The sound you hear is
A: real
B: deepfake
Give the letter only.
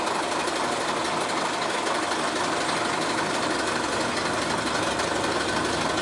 A